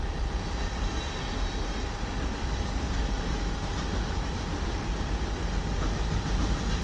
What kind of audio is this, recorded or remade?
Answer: recorded